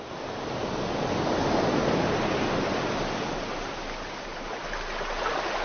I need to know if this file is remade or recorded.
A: recorded